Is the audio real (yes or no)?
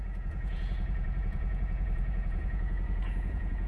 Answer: no